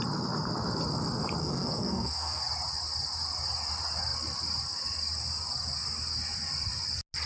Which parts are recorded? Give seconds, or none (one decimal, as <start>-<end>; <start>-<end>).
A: 0.0-1.4; 2.4-7.3